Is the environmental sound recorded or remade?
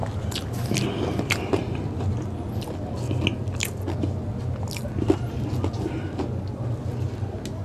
recorded